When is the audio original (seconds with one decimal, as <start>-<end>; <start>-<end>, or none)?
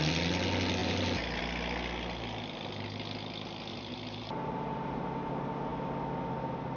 0.0-0.8; 1.4-3.7; 5.3-6.8